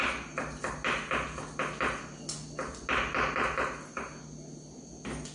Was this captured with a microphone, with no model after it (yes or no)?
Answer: yes